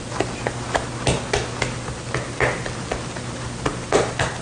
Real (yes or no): yes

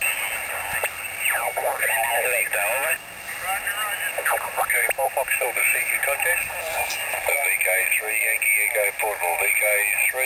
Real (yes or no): yes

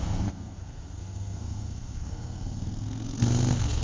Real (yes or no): no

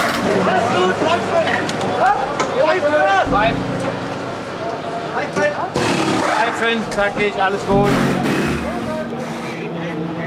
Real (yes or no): yes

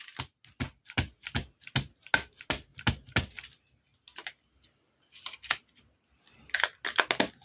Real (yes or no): yes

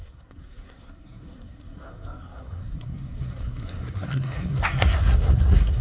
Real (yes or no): no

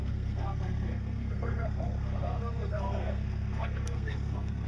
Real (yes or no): no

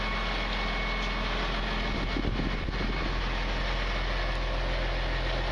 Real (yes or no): yes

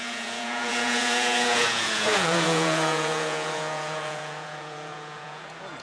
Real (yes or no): no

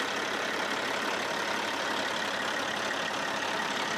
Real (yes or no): yes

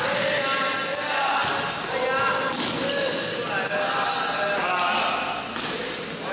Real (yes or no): yes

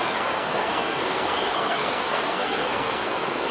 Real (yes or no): no